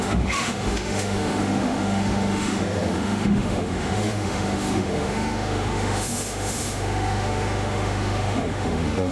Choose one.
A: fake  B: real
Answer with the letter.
A